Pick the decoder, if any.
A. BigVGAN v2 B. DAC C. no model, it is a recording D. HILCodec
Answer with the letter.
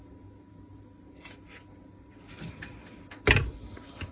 C